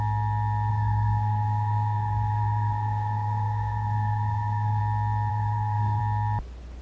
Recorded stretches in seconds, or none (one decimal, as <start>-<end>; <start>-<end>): 0.0-0.7; 4.8-5.3; 6.0-6.8